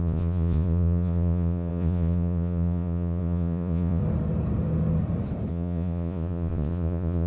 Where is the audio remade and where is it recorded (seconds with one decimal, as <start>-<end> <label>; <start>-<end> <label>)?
0.0-4.0 remade; 4.0-5.5 recorded; 5.5-7.3 remade